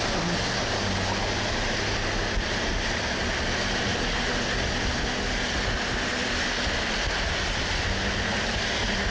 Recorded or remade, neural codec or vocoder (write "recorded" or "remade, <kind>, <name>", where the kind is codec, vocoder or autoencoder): recorded